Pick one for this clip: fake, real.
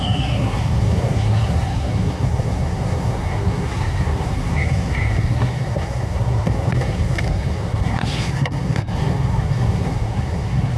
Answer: fake